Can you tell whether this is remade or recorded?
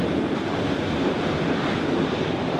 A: recorded